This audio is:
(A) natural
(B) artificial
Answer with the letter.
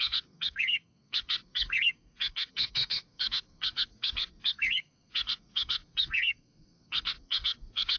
B